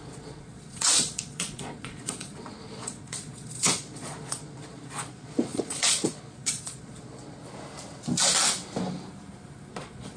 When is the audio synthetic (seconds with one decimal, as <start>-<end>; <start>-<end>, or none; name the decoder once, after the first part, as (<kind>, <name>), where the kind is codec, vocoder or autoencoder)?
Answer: 0.0-7.4 (vocoder, Vocos); 9.7-10.2